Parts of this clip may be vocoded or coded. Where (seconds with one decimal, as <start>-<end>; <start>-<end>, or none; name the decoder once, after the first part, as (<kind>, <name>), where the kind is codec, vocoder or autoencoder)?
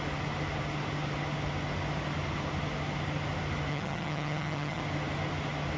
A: 3.7-4.8 (vocoder, HiFi-GAN)